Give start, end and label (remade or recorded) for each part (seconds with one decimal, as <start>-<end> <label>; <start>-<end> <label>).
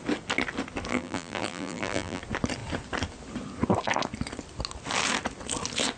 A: 0.0-0.9 recorded; 0.9-2.2 remade; 2.2-6.0 recorded